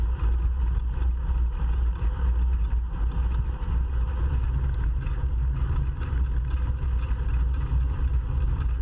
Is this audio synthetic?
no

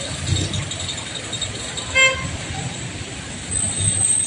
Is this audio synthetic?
no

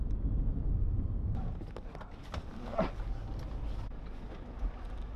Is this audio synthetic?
no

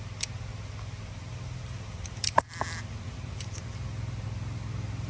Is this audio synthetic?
no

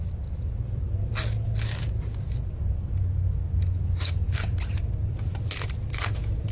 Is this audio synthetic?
no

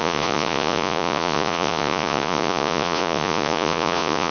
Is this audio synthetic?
yes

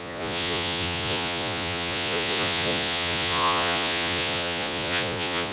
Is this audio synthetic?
yes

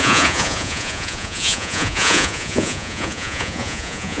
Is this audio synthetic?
yes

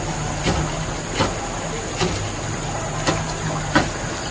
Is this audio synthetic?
no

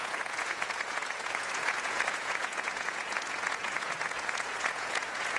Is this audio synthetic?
yes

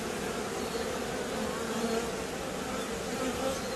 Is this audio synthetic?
no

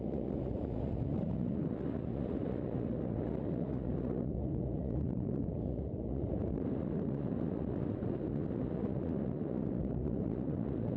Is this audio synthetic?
yes